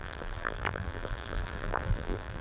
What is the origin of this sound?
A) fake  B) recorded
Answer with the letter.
A